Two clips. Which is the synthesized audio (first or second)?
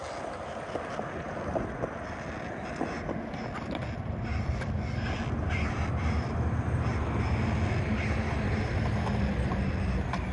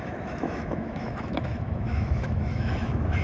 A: second